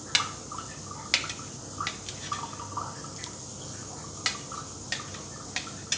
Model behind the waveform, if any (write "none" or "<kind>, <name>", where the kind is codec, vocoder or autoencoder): none